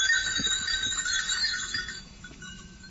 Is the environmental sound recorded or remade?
remade